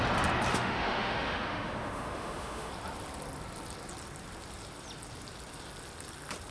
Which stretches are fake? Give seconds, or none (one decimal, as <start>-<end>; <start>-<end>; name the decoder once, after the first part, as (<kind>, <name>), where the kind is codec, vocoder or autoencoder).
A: 0.5-2.7 (autoencoder, DAC-VAE)